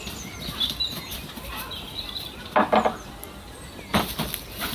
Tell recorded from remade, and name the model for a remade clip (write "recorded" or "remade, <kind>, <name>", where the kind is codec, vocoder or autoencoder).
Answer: recorded